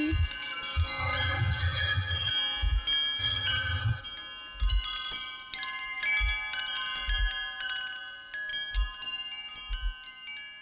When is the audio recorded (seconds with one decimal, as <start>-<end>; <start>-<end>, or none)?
0.0-1.0; 2.3-3.2; 4.0-10.6